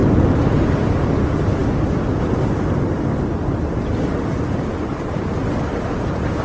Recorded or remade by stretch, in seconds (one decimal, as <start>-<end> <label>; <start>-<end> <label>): 0.0-5.7 recorded; 5.7-6.4 remade